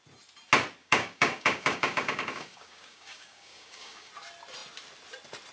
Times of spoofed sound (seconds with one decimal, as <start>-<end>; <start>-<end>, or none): 0.8-4.1